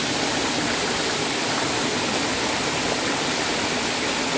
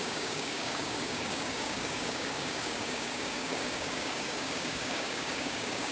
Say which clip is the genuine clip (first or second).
first